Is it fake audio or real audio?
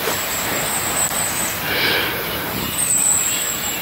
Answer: fake